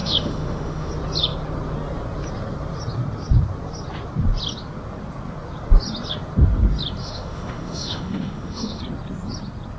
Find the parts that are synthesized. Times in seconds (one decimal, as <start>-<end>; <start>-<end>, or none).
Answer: 0.0-0.9; 7.0-8.8